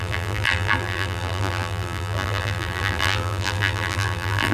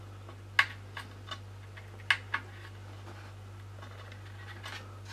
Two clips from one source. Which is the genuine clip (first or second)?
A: second